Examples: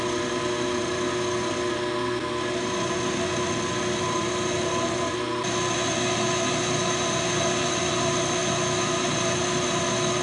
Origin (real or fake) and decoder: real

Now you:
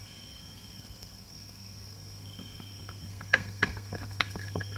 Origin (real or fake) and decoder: fake, codec, SNAC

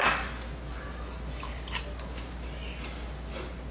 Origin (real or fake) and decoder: real